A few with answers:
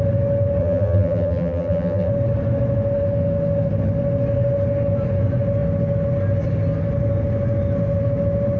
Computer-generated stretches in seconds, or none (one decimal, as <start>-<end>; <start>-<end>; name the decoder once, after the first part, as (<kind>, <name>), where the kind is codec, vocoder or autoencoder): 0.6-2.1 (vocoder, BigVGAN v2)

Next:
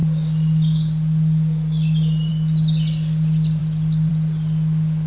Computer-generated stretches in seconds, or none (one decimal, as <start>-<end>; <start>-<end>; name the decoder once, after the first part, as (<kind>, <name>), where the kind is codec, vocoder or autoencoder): none

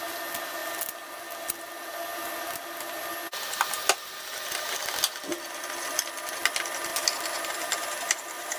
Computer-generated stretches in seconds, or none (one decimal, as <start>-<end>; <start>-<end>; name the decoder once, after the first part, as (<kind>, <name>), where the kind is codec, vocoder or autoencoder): 6.9-8.6 (vocoder, BigVGAN v2)

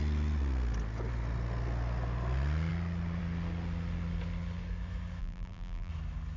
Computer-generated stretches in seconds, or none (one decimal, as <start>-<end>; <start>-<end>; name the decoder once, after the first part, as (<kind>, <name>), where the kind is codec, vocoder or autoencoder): 5.2-5.9 (vocoder, BigVGAN v2)

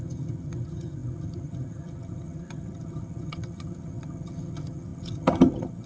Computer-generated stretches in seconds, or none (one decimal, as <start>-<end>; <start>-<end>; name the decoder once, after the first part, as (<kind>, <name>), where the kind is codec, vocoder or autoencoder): 0.0-5.9 (vocoder, HiFi-GAN)

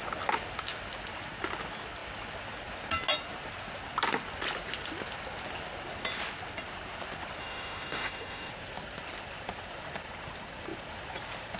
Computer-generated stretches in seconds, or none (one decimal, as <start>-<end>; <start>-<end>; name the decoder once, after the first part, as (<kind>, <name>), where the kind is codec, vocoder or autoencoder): 7.4-8.5 (autoencoder, DAC-VAE)